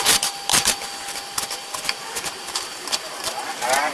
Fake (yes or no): yes